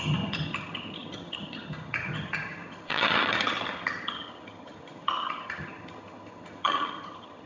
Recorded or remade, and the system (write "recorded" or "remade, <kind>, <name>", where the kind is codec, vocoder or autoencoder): remade, vocoder, HiFi-GAN